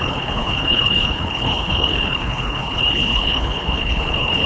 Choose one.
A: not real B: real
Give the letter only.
A